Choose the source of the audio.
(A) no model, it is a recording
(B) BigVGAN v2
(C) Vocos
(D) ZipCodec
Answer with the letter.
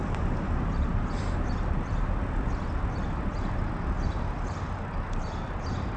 A